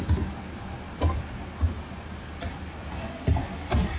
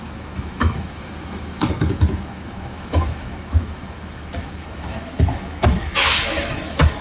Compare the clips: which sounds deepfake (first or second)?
second